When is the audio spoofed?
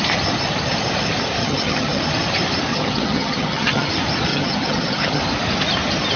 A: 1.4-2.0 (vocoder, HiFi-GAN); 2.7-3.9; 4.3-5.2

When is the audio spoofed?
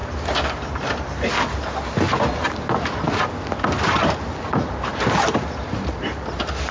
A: 4.9-6.1 (vocoder, BigVGAN v2)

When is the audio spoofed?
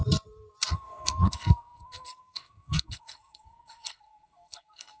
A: 0.7-5.0 (codec, SNAC)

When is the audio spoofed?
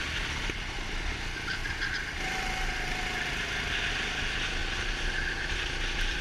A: 0.0-1.6 (vocoder, BigVGAN v2); 3.9-4.6; 5.4-6.2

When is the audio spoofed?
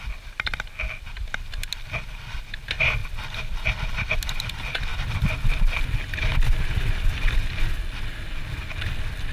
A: none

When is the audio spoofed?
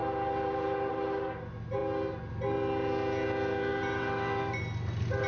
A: none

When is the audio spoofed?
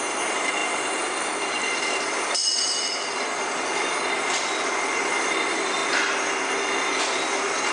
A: 0.0-0.6 (vocoder, BigVGAN v2); 1.2-5.8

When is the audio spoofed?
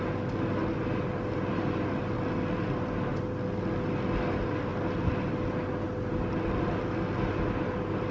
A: none